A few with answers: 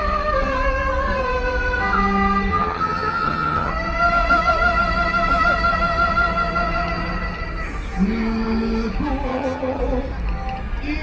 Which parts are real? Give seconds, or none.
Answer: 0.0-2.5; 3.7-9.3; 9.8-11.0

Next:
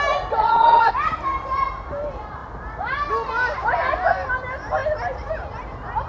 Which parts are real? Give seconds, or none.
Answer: 0.0-0.4; 0.9-6.1